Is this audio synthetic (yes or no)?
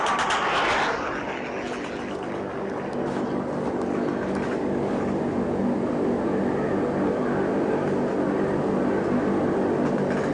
no